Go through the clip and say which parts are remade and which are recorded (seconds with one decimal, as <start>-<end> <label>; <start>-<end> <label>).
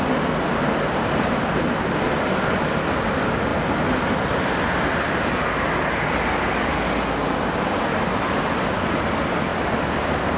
0.0-10.4 recorded